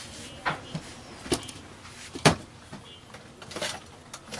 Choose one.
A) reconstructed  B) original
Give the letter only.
B